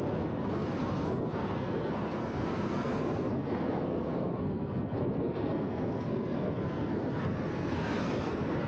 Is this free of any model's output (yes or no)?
no